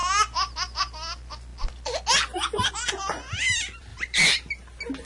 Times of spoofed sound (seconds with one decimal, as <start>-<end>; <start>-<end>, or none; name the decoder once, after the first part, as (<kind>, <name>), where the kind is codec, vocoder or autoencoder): 3.9-4.5 (vocoder, BigVGAN v2)